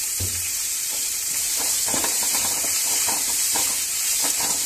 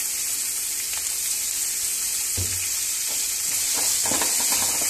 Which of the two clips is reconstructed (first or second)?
first